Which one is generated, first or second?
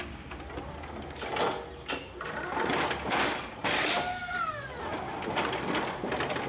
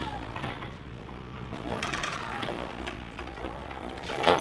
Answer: second